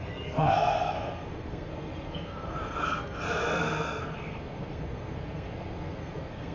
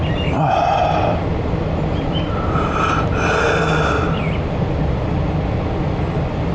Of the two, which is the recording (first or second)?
second